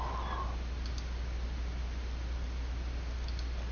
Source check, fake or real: real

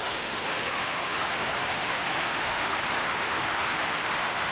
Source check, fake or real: fake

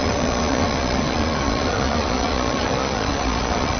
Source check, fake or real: fake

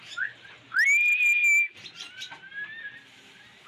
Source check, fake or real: real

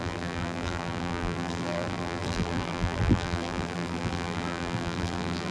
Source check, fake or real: fake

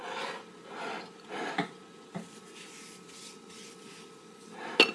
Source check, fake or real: real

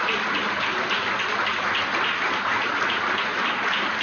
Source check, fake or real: real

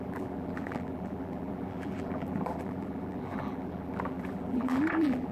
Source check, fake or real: fake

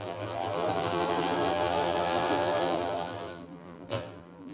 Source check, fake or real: fake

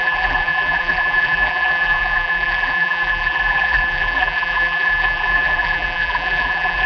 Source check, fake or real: fake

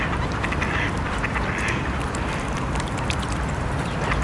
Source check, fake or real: fake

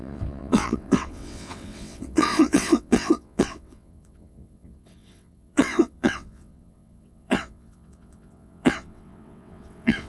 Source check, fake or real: fake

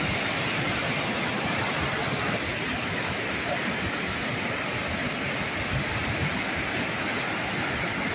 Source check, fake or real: real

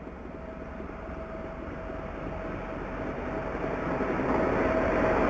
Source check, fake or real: real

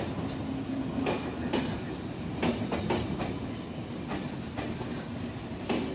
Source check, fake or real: real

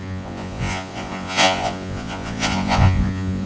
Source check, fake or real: fake